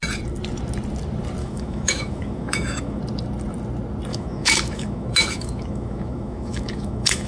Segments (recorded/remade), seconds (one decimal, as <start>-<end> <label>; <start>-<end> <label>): 0.0-1.4 recorded; 1.4-3.0 remade; 3.0-4.1 recorded; 4.1-7.3 remade